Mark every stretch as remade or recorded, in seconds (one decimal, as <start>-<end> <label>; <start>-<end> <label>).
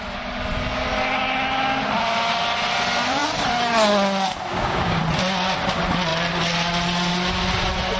0.0-4.5 recorded; 4.5-5.0 remade; 5.0-8.0 recorded